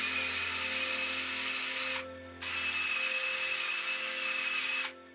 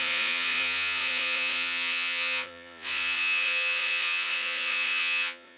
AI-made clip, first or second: second